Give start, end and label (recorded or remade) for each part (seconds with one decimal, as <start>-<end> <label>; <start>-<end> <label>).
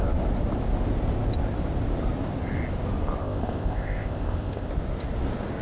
0.0-3.2 recorded; 3.2-4.7 remade; 4.7-5.6 recorded